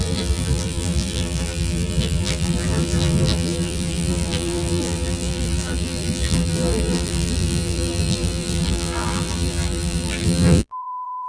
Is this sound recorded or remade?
remade